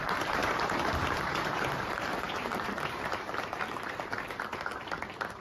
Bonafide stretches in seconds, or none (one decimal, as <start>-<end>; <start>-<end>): 0.0-0.4; 3.6-5.4